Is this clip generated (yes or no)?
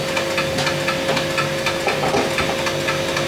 no